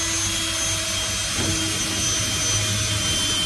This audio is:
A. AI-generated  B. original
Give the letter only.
B